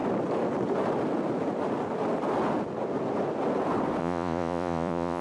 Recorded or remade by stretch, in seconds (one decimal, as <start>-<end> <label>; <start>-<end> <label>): 0.0-4.0 recorded; 4.0-5.2 remade